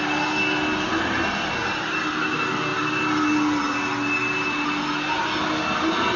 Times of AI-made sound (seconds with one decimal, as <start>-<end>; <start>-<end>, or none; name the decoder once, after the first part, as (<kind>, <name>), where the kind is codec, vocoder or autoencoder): none